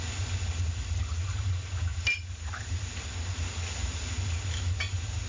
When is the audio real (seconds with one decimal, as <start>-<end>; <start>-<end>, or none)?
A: 0.0-1.9; 2.8-5.3

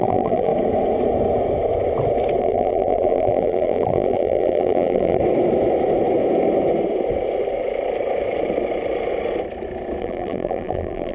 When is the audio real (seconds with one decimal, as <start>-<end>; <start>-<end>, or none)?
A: 0.5-2.4; 5.2-10.0

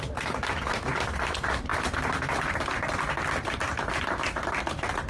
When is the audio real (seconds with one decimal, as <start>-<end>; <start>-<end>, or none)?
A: none

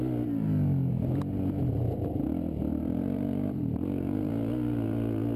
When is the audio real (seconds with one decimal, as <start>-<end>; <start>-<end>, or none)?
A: 0.0-2.7; 4.3-5.4

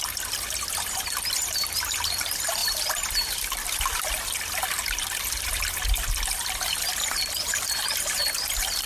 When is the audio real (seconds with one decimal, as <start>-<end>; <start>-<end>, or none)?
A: 0.0-8.9

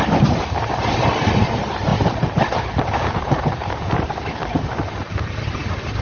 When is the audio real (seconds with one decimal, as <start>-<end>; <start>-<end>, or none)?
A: 0.0-1.9; 4.7-6.0